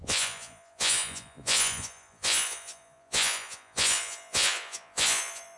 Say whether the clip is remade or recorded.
remade